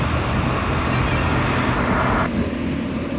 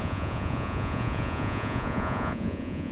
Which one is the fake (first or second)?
second